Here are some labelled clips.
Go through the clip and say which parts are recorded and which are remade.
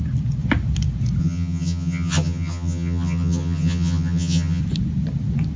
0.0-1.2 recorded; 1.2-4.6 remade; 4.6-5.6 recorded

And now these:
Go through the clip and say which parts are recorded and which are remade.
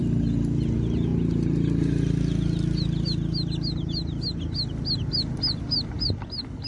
0.0-6.7 recorded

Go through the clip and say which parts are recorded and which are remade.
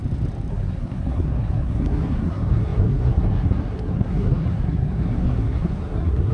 0.0-0.5 recorded; 0.5-6.3 remade